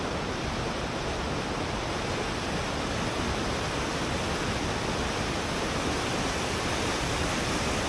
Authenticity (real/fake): real